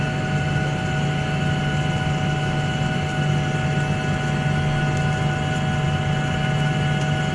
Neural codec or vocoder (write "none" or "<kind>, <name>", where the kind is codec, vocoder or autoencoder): none